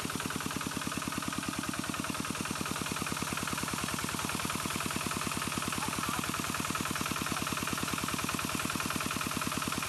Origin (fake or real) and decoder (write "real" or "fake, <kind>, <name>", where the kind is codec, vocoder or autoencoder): real